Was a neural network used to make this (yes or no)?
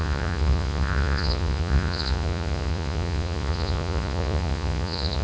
yes